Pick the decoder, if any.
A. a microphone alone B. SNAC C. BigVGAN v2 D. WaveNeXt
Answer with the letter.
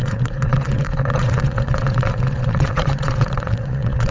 D